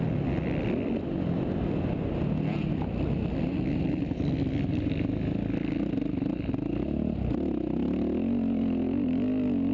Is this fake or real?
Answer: real